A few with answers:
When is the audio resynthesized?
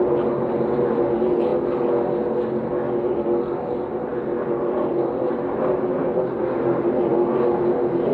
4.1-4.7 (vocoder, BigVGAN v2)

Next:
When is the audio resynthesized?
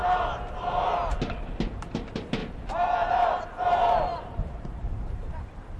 1.7-2.4 (vocoder, BigVGAN v2); 3.4-5.8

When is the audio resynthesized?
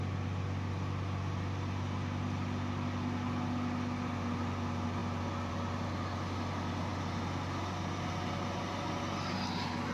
none